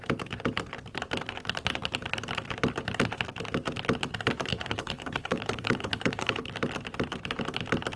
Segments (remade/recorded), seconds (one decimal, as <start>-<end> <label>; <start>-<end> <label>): 0.0-4.5 recorded; 4.5-6.5 remade; 6.5-8.0 recorded